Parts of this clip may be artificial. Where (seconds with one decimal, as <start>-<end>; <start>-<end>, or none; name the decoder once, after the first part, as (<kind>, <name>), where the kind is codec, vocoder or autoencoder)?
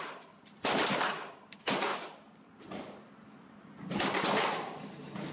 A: 0.0-1.9 (vocoder, BigVGAN v2)